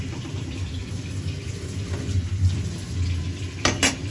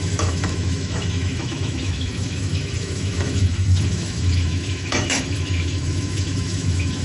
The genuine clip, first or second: first